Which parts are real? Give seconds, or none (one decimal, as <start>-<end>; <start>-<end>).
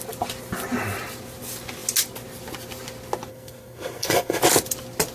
0.0-3.3; 4.4-5.1